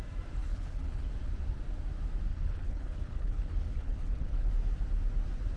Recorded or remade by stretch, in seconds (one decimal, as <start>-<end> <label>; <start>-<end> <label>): 0.0-0.4 recorded; 0.4-1.1 remade; 1.1-2.3 recorded; 2.3-4.5 remade; 4.5-5.6 recorded